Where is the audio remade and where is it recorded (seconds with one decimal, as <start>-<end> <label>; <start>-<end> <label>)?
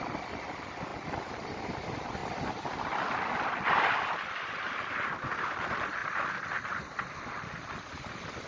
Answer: 0.0-8.5 recorded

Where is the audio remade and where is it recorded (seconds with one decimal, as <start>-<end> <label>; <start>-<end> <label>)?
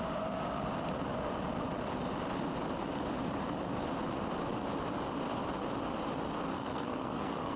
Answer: 0.0-6.5 recorded; 6.5-7.6 remade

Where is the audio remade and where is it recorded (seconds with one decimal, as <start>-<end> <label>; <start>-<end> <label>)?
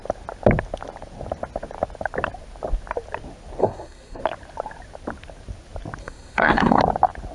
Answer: 0.0-3.6 recorded; 3.6-4.2 remade; 4.2-6.0 recorded; 6.0-6.8 remade; 6.8-7.3 recorded